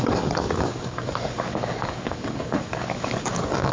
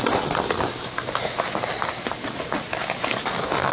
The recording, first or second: second